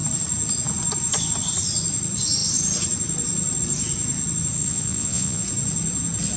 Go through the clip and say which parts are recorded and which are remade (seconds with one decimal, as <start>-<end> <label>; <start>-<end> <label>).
0.0-4.6 recorded; 4.6-5.4 remade; 5.4-6.4 recorded